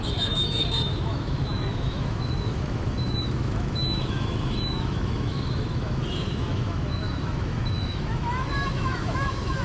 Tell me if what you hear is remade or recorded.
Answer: remade